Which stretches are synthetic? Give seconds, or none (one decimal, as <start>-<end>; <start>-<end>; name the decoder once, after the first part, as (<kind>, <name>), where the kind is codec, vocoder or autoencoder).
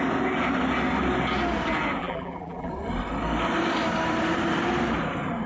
2.0-2.7 (vocoder, BigVGAN v2)